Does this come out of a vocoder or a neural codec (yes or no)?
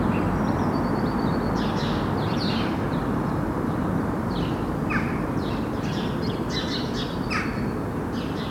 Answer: no